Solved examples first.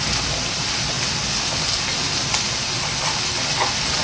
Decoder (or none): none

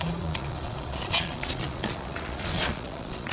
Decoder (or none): vocoder, Vocos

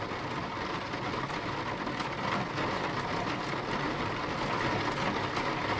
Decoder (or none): none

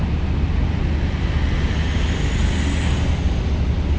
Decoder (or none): none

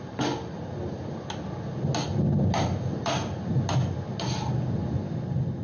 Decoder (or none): none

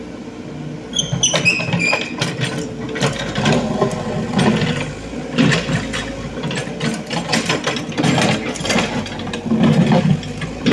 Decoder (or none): none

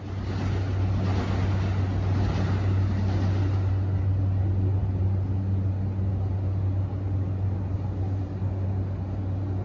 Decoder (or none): none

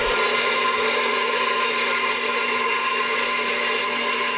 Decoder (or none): vocoder, BigVGAN v2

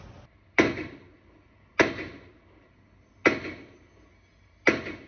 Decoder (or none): none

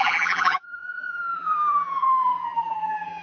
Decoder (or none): vocoder, BigVGAN v2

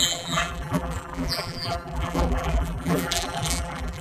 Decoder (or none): vocoder, BigVGAN v2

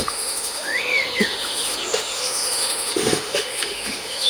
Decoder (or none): autoencoder, DAC-VAE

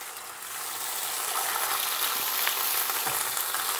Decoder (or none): none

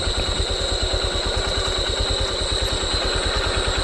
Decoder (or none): none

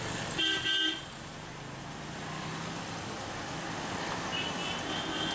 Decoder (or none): none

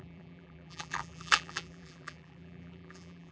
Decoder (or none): vocoder, BigVGAN v2